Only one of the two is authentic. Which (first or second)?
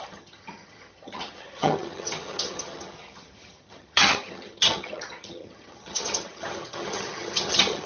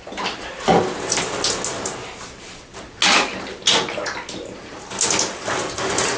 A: second